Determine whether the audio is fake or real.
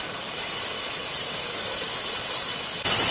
real